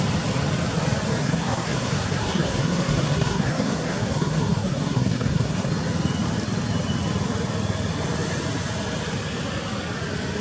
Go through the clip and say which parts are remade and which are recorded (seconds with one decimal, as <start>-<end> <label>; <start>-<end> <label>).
0.0-1.2 recorded; 1.2-5.7 remade; 5.7-10.4 recorded